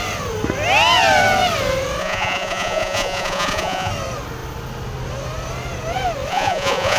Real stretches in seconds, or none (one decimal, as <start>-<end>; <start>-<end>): 0.0-2.0; 3.9-6.3